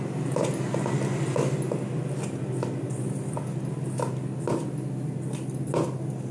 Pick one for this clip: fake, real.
real